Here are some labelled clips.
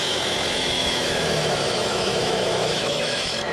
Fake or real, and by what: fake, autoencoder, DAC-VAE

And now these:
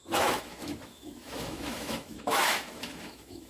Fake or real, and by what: fake, autoencoder, DAC-VAE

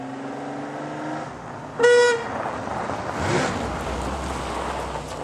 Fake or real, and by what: real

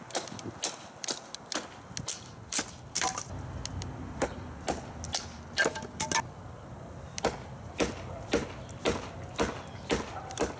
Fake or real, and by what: real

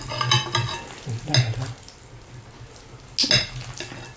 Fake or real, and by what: real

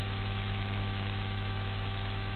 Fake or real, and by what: fake, autoencoder, DAC-VAE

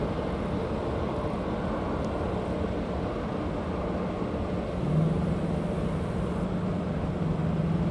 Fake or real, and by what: real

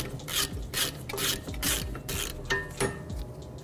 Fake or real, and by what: real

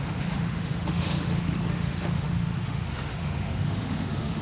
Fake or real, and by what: fake, autoencoder, DAC-VAE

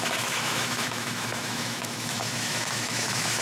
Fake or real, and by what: fake, autoencoder, DAC-VAE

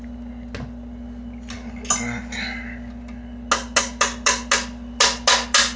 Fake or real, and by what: real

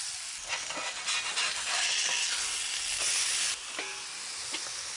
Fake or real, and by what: real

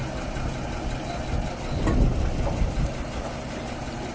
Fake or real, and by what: real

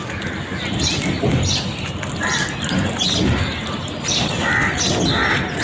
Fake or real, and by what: real